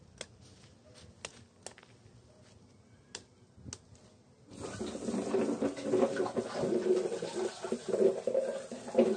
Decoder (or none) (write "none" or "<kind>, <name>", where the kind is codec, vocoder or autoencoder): none